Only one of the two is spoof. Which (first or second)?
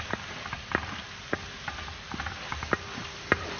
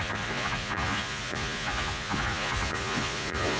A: second